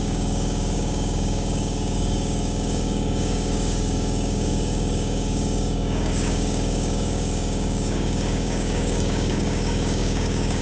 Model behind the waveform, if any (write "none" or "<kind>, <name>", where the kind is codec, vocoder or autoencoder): codec, DAC